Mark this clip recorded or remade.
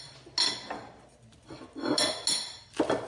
recorded